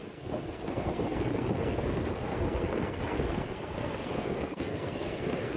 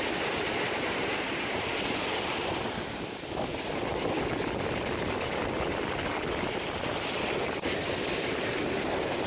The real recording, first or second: second